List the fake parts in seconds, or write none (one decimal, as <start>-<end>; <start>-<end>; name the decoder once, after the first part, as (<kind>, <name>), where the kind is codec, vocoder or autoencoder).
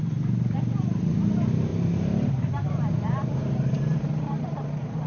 0.0-5.1 (vocoder, BigVGAN v2)